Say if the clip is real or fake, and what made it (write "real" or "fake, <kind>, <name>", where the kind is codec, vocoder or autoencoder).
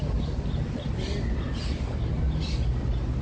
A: real